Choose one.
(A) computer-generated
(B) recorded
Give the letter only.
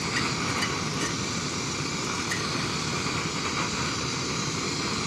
B